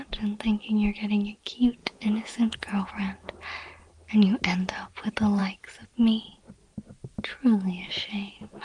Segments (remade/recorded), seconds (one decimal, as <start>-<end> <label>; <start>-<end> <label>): 0.0-1.8 recorded; 1.8-2.9 remade; 2.9-8.6 recorded